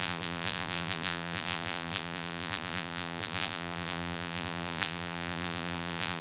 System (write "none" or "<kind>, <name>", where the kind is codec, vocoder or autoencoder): vocoder, BigVGAN v2